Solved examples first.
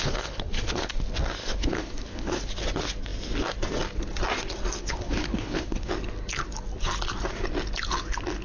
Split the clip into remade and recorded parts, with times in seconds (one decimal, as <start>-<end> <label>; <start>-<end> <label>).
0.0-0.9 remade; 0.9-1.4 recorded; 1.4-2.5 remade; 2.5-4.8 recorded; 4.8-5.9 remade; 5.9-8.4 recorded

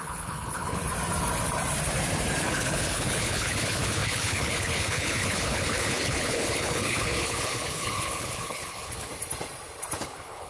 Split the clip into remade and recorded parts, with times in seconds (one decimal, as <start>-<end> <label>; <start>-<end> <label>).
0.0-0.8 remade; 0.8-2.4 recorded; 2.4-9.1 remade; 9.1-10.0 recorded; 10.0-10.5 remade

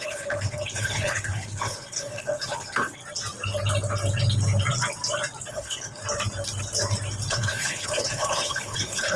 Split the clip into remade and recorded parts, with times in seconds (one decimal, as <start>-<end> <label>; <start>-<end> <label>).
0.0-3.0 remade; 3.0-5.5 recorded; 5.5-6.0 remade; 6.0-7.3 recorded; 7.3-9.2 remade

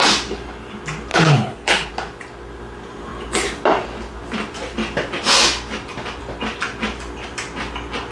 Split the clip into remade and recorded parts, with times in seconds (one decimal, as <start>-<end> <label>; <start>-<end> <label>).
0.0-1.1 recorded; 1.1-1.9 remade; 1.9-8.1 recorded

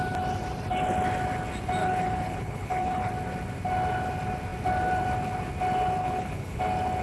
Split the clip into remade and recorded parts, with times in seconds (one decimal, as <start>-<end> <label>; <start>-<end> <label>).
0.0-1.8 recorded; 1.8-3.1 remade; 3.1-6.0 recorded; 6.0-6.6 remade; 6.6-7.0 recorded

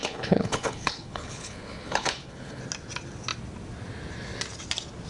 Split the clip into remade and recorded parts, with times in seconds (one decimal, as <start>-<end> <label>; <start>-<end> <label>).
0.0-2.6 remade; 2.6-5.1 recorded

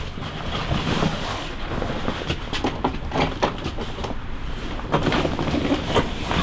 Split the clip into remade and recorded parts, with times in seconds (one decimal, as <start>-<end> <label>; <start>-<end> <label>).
0.0-1.3 recorded; 1.3-1.9 remade; 1.9-6.4 recorded